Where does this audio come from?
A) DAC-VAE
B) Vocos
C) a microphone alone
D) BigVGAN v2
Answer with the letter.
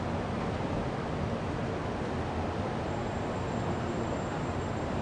C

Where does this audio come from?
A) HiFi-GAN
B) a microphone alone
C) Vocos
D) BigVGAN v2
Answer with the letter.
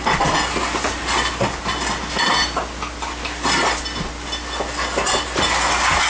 B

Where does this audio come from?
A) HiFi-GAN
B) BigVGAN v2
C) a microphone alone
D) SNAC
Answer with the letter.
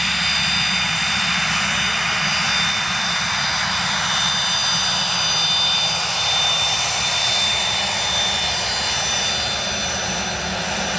C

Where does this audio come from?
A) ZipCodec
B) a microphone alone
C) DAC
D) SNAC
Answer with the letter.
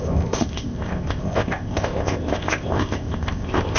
A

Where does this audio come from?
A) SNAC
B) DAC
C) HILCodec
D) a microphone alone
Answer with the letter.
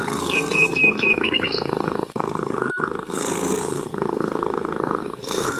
A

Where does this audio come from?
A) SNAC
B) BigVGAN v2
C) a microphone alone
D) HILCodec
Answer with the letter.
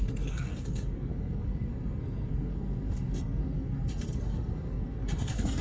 A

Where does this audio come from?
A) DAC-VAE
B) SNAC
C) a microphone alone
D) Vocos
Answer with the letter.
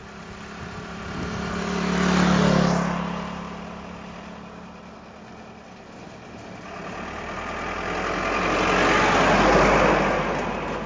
C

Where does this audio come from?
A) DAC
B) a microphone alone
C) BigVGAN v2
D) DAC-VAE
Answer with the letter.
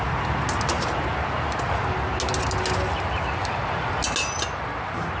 B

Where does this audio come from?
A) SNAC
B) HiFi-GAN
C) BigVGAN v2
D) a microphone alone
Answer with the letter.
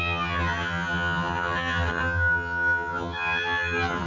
B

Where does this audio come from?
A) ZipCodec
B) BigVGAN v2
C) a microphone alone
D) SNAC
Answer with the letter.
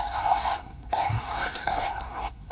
D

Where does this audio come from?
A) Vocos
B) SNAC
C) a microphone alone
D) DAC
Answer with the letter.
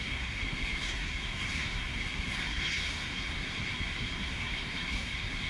B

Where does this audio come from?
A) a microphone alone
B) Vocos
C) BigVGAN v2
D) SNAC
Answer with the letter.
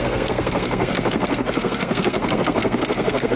D